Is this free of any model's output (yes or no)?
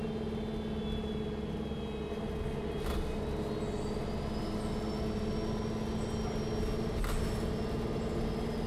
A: yes